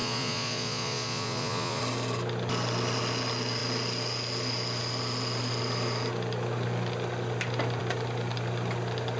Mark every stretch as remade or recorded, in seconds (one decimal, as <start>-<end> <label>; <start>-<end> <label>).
0.0-1.8 remade; 1.8-9.2 recorded

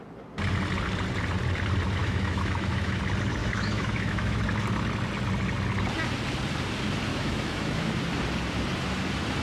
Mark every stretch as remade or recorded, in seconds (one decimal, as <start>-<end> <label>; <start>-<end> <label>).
0.0-2.0 recorded; 2.0-3.0 remade; 3.0-3.4 recorded; 3.4-4.4 remade; 4.4-7.1 recorded; 7.1-7.9 remade; 7.9-9.4 recorded

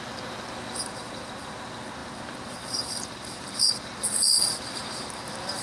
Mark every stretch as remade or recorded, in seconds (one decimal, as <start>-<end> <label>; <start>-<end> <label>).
0.0-2.0 recorded; 2.0-5.6 remade